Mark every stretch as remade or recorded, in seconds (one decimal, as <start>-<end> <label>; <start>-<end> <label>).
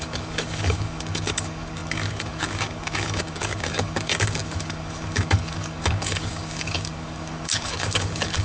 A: 0.0-8.4 remade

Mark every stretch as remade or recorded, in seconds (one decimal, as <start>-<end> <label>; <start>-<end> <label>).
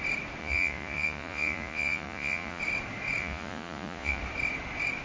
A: 0.0-0.4 recorded; 0.4-2.6 remade; 2.6-3.2 recorded; 3.2-4.2 remade; 4.2-5.0 recorded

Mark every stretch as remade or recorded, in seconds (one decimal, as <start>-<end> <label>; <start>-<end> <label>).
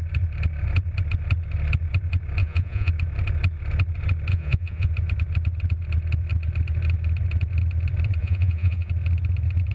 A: 0.0-2.4 recorded; 2.4-2.9 remade; 2.9-4.3 recorded; 4.3-4.9 remade; 4.9-8.2 recorded; 8.2-8.9 remade; 8.9-9.7 recorded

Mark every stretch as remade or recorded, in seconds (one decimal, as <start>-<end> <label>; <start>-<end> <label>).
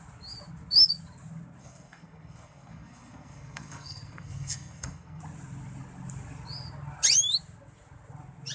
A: 0.0-1.6 recorded; 1.6-5.2 remade; 5.2-8.5 recorded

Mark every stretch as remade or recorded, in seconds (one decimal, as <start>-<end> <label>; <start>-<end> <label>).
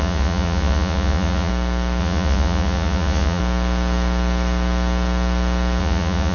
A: 0.0-1.5 remade; 1.5-2.0 recorded; 2.0-3.4 remade; 3.4-5.8 recorded; 5.8-6.3 remade